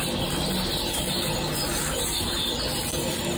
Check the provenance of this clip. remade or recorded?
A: recorded